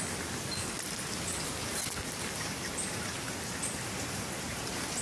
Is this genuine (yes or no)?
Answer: yes